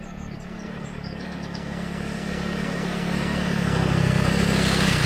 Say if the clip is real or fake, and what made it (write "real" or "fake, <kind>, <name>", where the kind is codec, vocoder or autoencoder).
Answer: fake, codec, SNAC